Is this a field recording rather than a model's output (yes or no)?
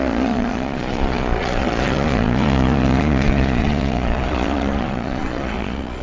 no